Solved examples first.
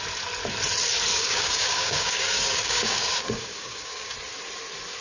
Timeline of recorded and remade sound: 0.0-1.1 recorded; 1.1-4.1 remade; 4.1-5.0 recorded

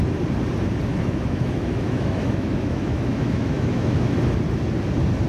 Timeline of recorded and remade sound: 0.0-0.9 recorded; 0.9-4.1 remade; 4.1-5.3 recorded